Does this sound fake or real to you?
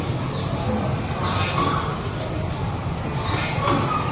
real